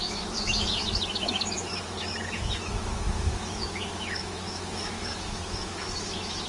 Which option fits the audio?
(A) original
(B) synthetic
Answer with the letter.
B